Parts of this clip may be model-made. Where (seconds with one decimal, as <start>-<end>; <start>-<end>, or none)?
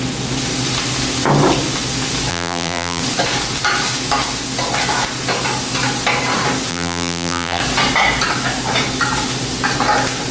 2.3-3.0; 6.7-7.6